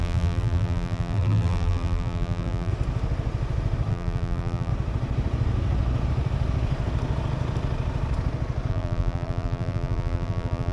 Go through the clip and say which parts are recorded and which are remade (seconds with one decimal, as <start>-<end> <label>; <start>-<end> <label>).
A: 0.0-2.7 remade; 2.7-3.9 recorded; 3.9-4.7 remade; 4.7-8.7 recorded; 8.7-10.7 remade